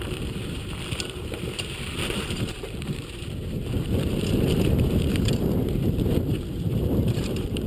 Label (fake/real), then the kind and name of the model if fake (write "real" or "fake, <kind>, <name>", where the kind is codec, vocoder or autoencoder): fake, vocoder, BigVGAN v2